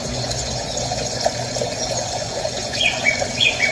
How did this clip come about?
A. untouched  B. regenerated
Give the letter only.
B